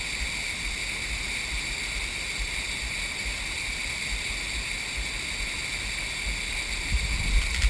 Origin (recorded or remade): recorded